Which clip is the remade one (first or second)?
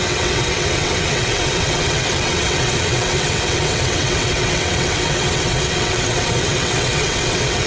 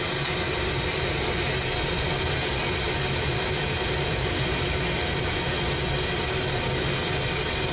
first